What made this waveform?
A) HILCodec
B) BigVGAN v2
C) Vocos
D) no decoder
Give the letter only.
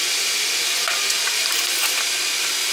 D